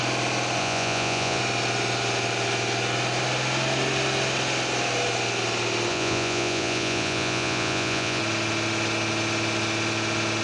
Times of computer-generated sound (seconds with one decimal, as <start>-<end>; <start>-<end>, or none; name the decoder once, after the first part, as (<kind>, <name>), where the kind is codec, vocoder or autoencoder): 0.6-1.4 (vocoder, Vocos); 5.9-8.2